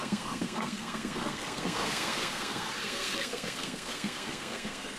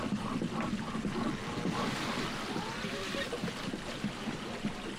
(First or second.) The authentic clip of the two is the second